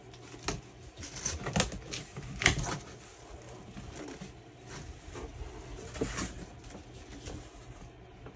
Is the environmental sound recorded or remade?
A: recorded